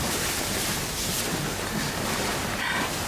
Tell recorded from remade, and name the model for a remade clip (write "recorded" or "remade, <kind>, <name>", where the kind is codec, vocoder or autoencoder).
remade, vocoder, BigVGAN v2